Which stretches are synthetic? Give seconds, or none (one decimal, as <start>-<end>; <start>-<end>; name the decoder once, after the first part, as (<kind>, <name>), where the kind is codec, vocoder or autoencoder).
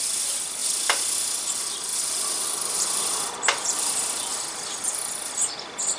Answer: 0.0-0.6 (vocoder, BigVGAN v2); 1.5-4.3; 5.0-6.0